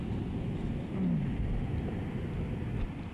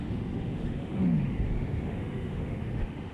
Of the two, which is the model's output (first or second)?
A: second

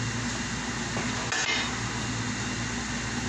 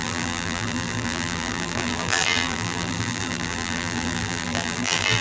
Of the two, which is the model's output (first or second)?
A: second